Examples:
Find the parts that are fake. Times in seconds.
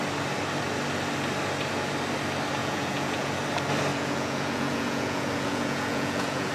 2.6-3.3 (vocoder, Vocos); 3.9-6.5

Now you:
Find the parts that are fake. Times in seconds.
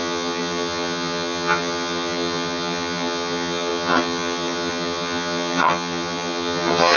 0.0-7.0 (vocoder, HiFi-GAN)